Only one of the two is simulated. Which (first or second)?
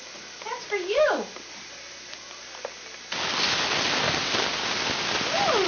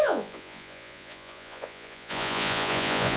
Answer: second